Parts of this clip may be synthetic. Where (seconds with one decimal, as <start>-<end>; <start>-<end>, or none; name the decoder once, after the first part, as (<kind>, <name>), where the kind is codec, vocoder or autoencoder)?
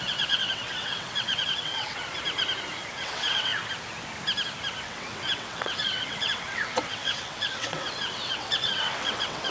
0.0-2.0 (vocoder, WaveNeXt); 2.9-3.5; 4.8-9.5